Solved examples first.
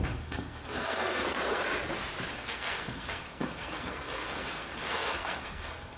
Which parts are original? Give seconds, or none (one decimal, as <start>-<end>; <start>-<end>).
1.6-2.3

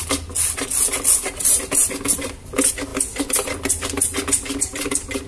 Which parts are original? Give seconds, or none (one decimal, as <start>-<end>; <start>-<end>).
0.0-5.3

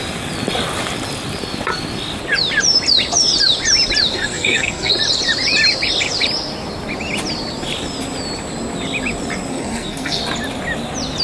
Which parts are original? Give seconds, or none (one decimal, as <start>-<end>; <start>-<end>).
0.0-4.1; 4.9-9.5; 10.2-11.2

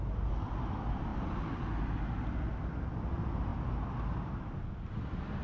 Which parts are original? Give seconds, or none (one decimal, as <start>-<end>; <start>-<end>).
0.0-5.4

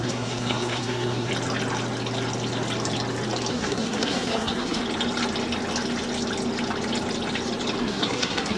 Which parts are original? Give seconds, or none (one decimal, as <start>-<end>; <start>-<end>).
1.3-3.5; 4.8-7.8

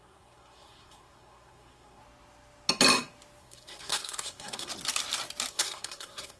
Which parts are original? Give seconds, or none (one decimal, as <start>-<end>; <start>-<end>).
2.0-3.4; 4.7-5.5

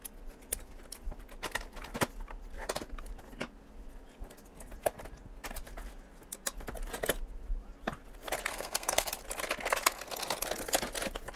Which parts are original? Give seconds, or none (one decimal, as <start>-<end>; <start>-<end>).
0.0-8.5; 9.1-11.4